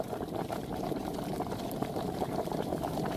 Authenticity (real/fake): fake